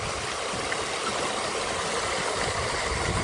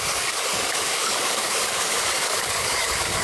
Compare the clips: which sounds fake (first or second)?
second